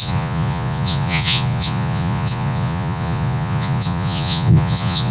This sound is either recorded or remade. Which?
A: remade